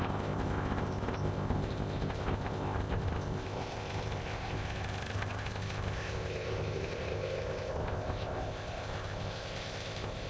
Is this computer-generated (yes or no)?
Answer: yes